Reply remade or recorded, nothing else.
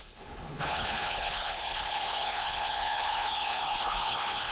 remade